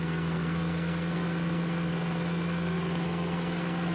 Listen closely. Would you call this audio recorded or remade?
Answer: remade